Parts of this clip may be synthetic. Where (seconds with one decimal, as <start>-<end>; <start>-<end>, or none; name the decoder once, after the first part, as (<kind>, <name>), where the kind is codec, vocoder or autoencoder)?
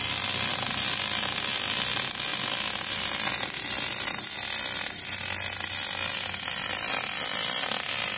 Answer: none